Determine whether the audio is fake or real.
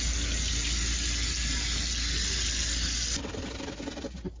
real